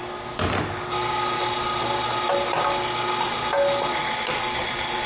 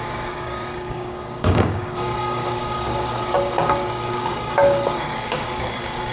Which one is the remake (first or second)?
second